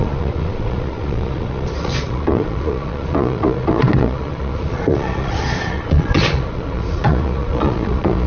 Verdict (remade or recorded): remade